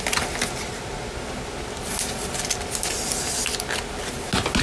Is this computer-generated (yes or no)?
no